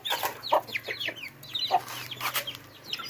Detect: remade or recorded recorded